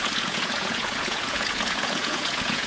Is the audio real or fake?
fake